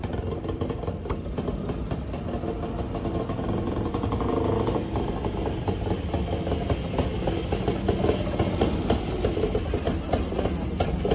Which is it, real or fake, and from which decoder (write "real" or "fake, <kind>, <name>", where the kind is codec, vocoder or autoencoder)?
real